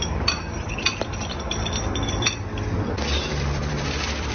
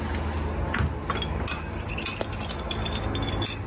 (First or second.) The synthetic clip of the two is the first